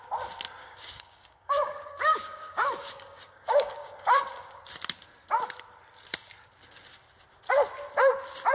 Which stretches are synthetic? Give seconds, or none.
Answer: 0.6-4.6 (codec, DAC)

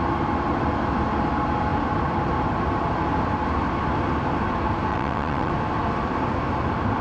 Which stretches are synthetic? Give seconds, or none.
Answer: 4.9-5.5 (vocoder, WaveNeXt)

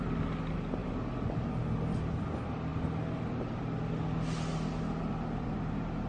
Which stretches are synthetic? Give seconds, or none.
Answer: 0.8-2.0 (vocoder, BigVGAN v2)

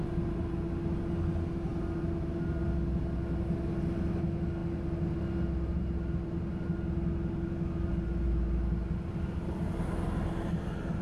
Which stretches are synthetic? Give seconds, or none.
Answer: none